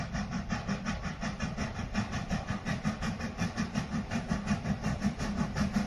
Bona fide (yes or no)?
yes